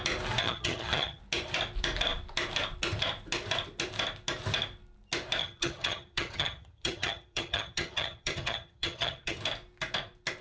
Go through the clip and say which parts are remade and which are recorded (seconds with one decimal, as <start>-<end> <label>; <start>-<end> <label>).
0.0-0.4 recorded; 0.4-1.2 remade; 1.2-5.4 recorded; 5.4-9.4 remade; 9.4-10.4 recorded